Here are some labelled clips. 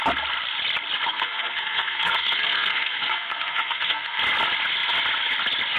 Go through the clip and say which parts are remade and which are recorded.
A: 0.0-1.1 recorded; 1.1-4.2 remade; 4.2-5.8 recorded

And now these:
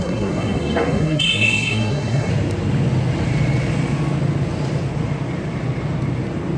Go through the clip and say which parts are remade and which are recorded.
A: 0.0-2.3 remade; 2.3-6.6 recorded

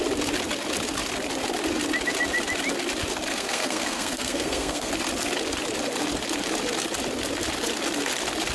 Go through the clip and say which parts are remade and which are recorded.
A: 0.0-3.3 recorded; 3.3-4.9 remade; 4.9-8.5 recorded

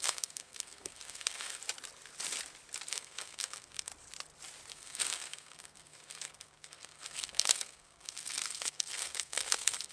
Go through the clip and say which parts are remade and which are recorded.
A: 0.0-1.6 remade; 1.6-2.9 recorded; 2.9-3.9 remade; 3.9-4.7 recorded; 4.7-9.9 remade

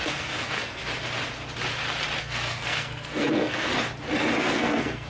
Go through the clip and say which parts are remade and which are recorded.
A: 0.0-0.8 remade; 0.8-2.2 recorded; 2.2-3.7 remade; 3.7-4.4 recorded; 4.4-5.1 remade